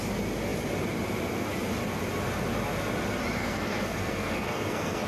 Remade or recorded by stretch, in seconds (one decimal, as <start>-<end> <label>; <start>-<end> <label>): 0.0-3.4 recorded; 3.4-5.1 remade